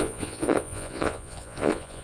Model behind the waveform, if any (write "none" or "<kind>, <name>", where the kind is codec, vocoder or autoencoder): vocoder, Vocos